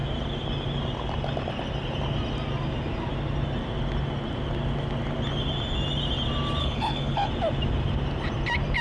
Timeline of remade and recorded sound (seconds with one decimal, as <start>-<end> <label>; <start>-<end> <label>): 0.0-6.6 recorded; 6.6-7.3 remade; 7.3-8.8 recorded